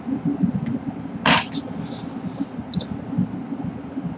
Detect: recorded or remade recorded